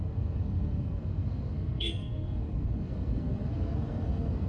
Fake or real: fake